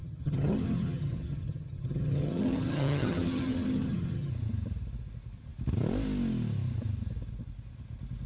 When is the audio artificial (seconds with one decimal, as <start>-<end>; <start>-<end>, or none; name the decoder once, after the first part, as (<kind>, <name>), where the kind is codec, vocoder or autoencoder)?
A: 0.0-4.3 (vocoder, HiFi-GAN)